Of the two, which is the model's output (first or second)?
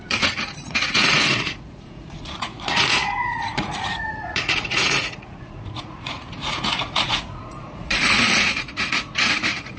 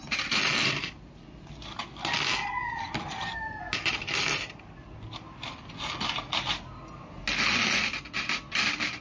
first